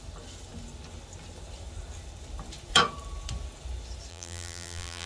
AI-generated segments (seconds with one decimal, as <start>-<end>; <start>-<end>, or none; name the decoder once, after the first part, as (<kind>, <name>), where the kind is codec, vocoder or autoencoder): 4.1-5.1 (vocoder, BigVGAN v2)